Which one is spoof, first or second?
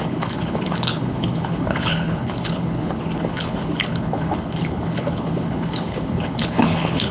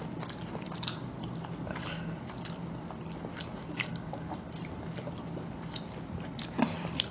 first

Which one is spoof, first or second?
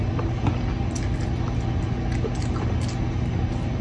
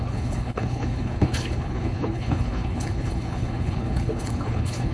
second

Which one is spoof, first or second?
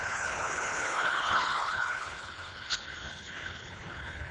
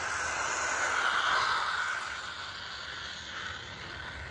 first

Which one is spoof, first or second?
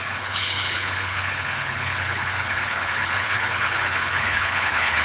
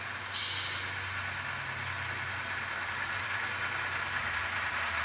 first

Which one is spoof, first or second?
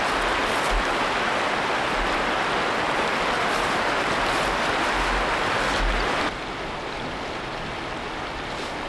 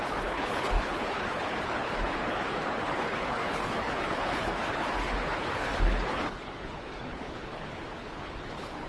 second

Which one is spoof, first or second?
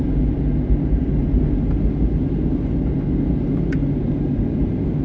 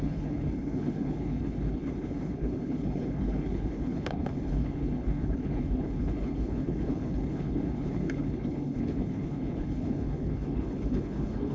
second